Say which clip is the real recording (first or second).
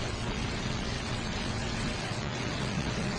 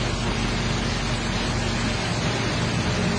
second